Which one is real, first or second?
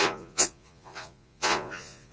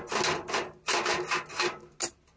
second